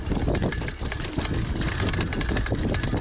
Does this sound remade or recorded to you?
recorded